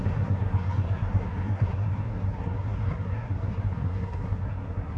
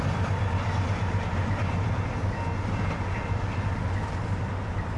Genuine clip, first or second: second